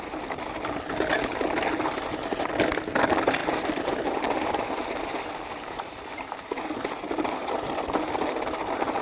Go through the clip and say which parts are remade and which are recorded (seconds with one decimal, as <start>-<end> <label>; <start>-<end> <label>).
0.0-3.4 recorded; 3.4-6.6 remade; 6.6-9.0 recorded